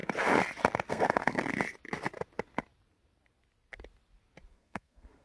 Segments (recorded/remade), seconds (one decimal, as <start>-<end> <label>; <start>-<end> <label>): 0.0-0.9 recorded; 0.9-1.4 remade; 1.4-4.5 recorded; 4.5-5.2 remade

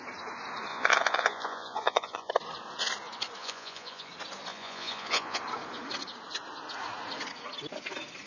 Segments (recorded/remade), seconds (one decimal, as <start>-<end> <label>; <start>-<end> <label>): 0.0-0.7 recorded; 0.7-2.3 remade; 2.3-3.4 recorded; 3.4-4.1 remade; 4.1-4.5 recorded; 4.5-5.4 remade; 5.4-8.3 recorded

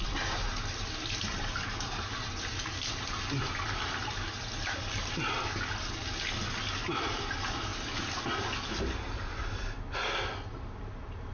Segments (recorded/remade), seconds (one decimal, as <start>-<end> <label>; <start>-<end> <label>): 0.0-11.3 recorded

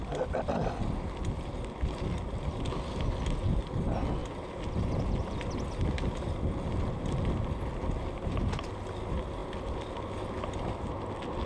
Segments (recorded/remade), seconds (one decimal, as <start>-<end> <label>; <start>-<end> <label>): 0.0-11.5 recorded

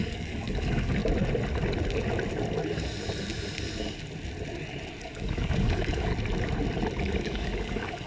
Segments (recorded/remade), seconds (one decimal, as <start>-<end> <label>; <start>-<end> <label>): 0.0-1.0 remade; 1.0-5.0 recorded; 5.0-6.1 remade; 6.1-7.0 recorded; 7.0-8.1 remade

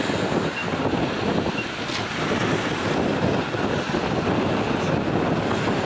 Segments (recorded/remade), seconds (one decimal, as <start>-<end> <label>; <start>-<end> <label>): 0.0-5.8 recorded

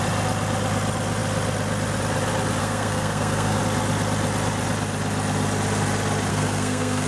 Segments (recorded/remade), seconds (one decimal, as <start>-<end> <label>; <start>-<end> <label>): 0.0-2.6 recorded; 2.6-3.6 remade; 3.6-6.3 recorded; 6.3-7.1 remade